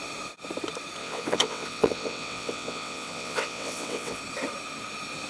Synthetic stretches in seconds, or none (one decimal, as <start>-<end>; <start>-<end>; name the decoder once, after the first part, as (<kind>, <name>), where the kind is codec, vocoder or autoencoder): 1.0-4.2 (vocoder, WaveNeXt)